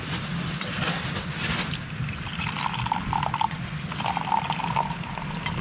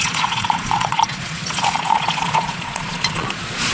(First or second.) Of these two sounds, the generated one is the second